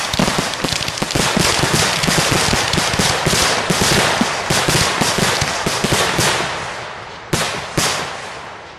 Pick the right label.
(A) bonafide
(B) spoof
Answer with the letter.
A